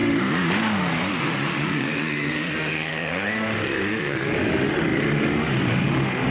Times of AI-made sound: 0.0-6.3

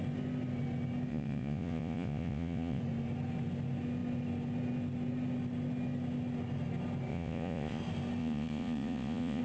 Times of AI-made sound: 1.1-2.8; 7.1-7.8; 8.2-9.4

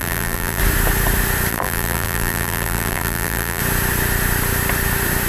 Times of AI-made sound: 0.0-0.6; 1.5-3.6

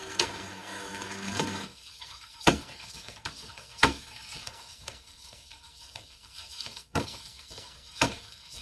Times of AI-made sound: 0.0-8.6

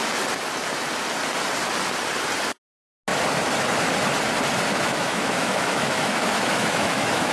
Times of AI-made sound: 4.7-7.3

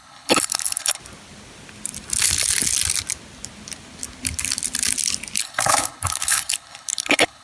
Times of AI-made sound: 0.0-1.0; 5.4-7.4

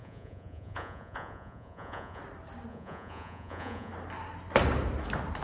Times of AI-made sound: 0.0-2.2; 2.7-3.9